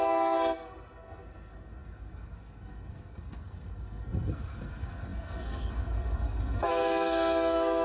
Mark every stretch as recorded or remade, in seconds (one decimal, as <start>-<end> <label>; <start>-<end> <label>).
0.0-7.8 remade